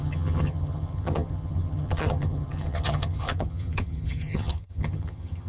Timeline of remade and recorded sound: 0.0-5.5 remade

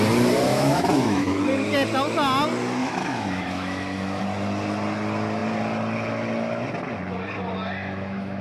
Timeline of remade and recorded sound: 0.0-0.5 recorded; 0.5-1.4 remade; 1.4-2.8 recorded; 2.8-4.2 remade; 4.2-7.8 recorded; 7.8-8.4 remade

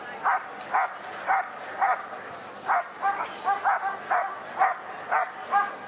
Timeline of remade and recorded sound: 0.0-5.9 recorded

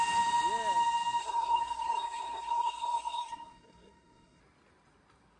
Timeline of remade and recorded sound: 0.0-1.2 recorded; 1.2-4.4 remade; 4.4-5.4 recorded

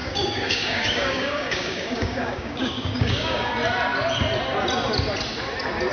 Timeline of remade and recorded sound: 0.0-3.5 remade; 3.5-5.9 recorded

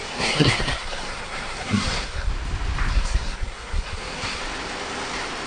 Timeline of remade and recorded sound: 0.0-2.3 remade; 2.3-2.9 recorded; 2.9-4.4 remade; 4.4-5.5 recorded

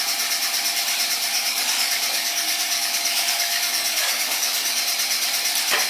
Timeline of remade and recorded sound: 0.0-1.3 recorded; 1.3-4.8 remade; 4.8-5.9 recorded

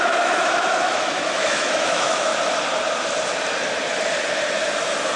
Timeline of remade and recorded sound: 0.0-2.3 remade; 2.3-5.2 recorded